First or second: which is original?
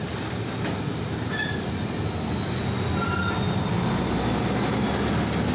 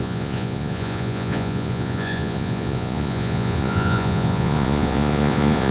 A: first